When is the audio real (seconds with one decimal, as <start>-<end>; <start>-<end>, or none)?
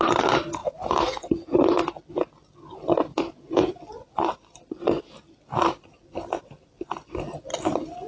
0.0-3.1; 3.8-8.1